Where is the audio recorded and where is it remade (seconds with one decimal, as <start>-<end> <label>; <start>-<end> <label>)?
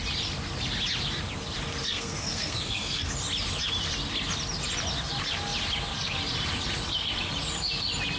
0.0-1.8 recorded; 1.8-3.1 remade; 3.1-8.2 recorded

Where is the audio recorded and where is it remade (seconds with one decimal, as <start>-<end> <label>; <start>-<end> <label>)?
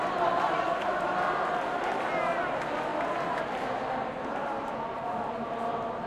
0.0-6.1 recorded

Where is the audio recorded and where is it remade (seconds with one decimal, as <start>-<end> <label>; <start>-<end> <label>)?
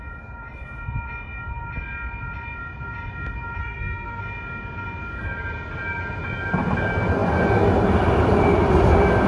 0.0-3.6 recorded; 3.6-4.2 remade; 4.2-9.3 recorded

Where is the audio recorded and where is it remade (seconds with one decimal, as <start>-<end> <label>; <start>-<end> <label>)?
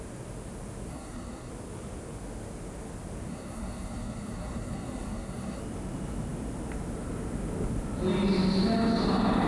0.0-0.9 recorded; 0.9-1.5 remade; 1.5-3.3 recorded; 3.3-5.6 remade; 5.6-9.5 recorded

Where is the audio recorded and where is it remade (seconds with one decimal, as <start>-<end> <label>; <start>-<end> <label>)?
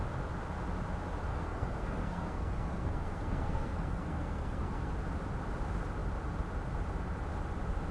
0.0-1.3 recorded; 1.3-4.9 remade; 4.9-7.9 recorded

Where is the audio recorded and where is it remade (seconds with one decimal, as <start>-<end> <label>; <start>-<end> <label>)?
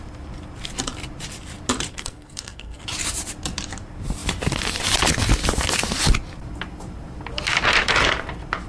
0.0-1.9 recorded; 1.9-2.8 remade; 2.8-8.7 recorded